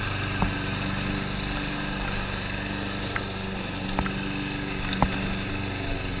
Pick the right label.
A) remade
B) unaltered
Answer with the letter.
B